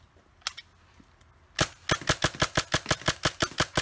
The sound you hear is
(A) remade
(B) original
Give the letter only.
B